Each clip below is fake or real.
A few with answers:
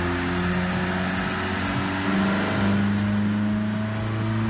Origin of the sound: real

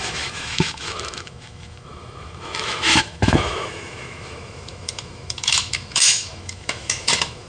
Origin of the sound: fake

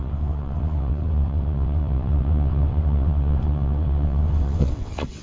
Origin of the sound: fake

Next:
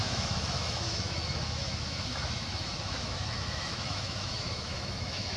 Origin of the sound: fake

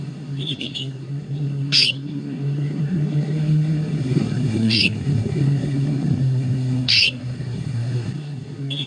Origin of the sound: fake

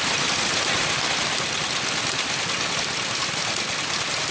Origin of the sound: real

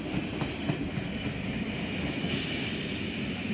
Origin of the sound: real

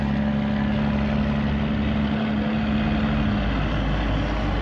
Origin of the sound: real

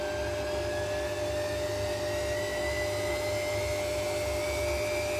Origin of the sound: real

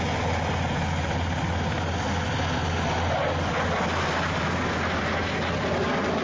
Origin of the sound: real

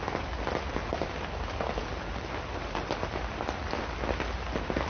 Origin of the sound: real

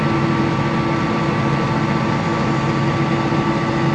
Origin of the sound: real